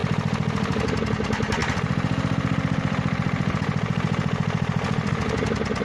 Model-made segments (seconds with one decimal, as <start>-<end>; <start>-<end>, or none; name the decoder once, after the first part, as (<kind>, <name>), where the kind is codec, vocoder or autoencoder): none